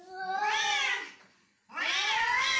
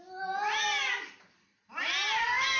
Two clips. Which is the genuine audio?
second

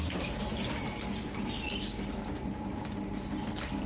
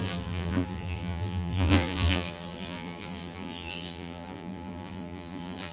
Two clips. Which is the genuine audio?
first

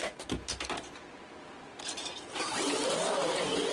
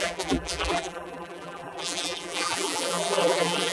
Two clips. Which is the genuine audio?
first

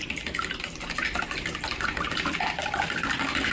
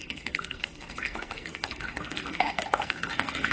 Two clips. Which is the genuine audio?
first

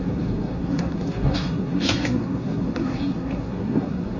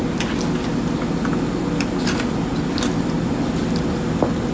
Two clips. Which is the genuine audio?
second